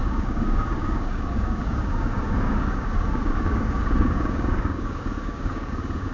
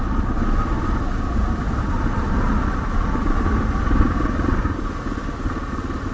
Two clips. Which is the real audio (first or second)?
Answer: second